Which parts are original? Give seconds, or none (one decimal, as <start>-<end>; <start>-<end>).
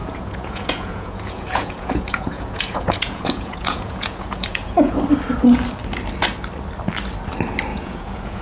5.0-7.7